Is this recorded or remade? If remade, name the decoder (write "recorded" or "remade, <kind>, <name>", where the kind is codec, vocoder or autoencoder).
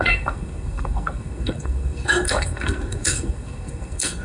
remade, codec, SNAC